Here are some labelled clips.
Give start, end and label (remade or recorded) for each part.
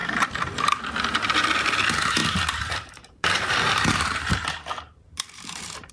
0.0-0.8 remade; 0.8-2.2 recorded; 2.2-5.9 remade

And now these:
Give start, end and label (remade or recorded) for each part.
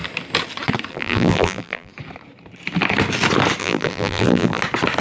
0.0-0.9 recorded; 0.9-1.9 remade; 1.9-3.6 recorded; 3.6-4.6 remade; 4.6-5.0 recorded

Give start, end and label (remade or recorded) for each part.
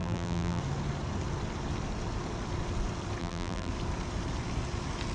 0.0-0.6 remade; 0.6-3.2 recorded; 3.2-3.7 remade; 3.7-5.1 recorded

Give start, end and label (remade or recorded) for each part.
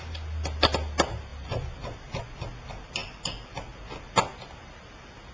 0.0-1.3 recorded; 1.3-2.2 remade; 2.2-5.3 recorded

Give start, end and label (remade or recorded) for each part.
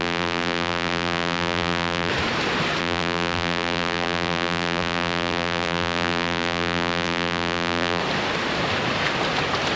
0.0-2.1 remade; 2.1-2.8 recorded; 2.8-8.0 remade; 8.0-9.8 recorded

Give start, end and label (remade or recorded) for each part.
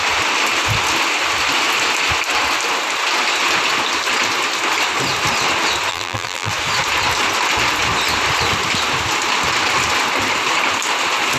0.0-5.9 recorded; 5.9-6.5 remade; 6.5-11.4 recorded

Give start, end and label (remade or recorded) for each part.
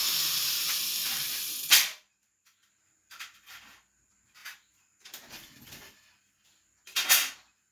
0.0-4.4 remade; 4.4-5.3 recorded; 5.3-7.7 remade